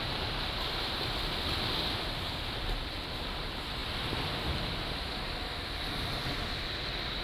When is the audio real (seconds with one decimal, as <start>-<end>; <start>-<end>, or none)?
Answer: 0.0-7.2